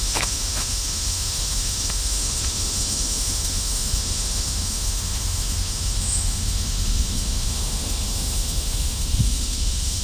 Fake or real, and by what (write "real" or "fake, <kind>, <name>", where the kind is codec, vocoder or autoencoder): fake, autoencoder, DAC-VAE